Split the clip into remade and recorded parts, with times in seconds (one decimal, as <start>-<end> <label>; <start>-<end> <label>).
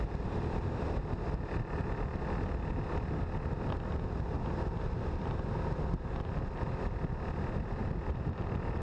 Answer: 0.0-8.8 recorded